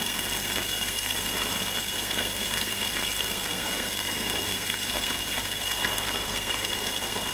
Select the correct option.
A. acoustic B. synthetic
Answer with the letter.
B